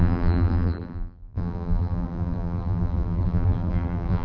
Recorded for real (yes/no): no